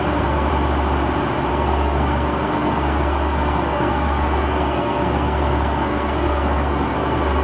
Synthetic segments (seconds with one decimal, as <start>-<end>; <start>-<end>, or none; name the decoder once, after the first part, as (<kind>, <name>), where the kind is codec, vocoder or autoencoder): 0.0-0.5 (codec, SNAC); 1.5-7.4